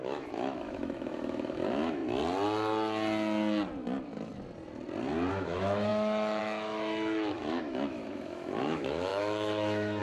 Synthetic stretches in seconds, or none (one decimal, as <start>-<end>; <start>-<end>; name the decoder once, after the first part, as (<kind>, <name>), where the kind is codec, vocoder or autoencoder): 0.0-2.0 (autoencoder, DAC-VAE); 5.3-10.0